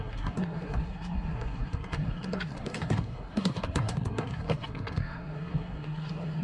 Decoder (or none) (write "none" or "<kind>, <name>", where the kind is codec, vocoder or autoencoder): codec, SNAC